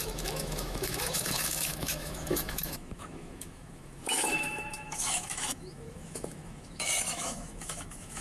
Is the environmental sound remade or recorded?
remade